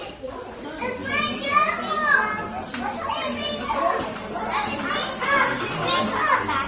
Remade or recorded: recorded